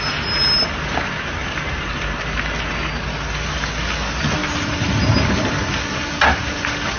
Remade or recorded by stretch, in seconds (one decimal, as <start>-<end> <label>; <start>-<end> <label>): 0.0-7.0 recorded